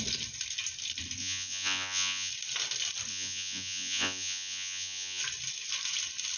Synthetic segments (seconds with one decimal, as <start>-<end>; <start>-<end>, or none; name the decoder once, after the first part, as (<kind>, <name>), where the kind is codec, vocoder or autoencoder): 1.2-2.3 (vocoder, Vocos); 3.1-5.2